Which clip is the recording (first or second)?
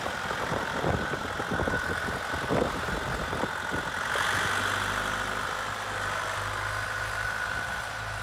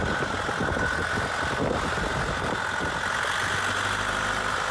second